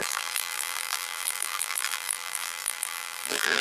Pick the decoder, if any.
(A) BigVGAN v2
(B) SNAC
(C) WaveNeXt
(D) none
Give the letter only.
A